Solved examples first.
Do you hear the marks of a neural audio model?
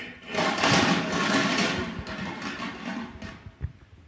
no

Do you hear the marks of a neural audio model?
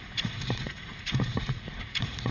yes